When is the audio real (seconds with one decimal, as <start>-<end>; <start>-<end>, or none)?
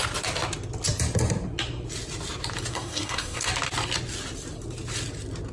0.0-2.7; 3.5-5.5